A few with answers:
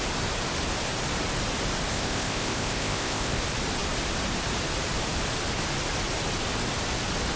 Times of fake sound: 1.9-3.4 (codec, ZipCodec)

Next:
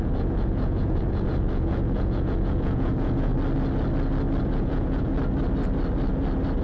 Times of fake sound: 0.0-3.3 (vocoder, Vocos); 4.5-5.1

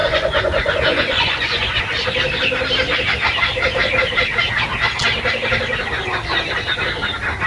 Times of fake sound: 0.0-1.8 (vocoder, Vocos)

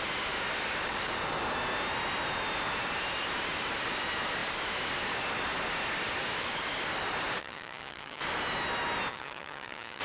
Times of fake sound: 7.4-8.2 (vocoder, HiFi-GAN); 9.1-10.0

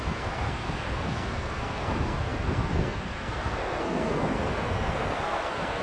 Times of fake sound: 0.0-5.8 (codec, SNAC)

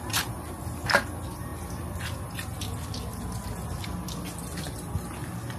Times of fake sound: none

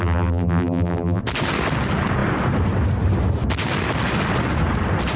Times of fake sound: 0.0-1.2 (vocoder, BigVGAN v2)